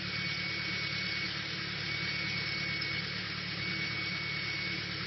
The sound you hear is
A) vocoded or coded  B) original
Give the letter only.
B